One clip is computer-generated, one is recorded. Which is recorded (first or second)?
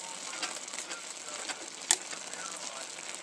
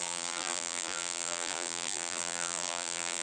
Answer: first